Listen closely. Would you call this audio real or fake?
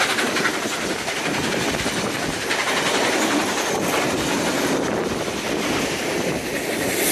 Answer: real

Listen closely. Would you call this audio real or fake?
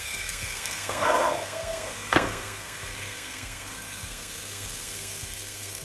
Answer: fake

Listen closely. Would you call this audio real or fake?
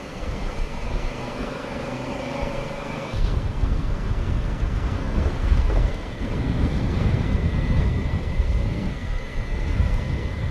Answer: fake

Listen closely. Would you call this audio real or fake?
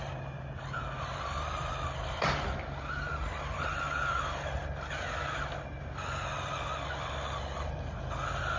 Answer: real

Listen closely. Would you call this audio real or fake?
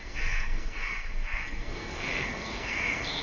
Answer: fake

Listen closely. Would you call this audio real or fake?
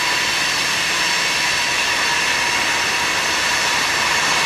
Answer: real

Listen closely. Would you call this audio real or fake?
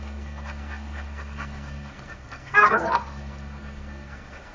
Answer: fake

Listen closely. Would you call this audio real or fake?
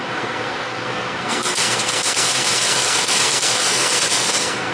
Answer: fake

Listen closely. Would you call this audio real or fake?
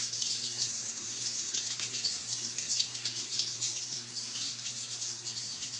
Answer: fake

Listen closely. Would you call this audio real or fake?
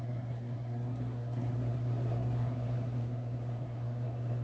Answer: fake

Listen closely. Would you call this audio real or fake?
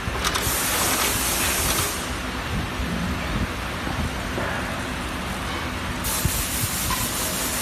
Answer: real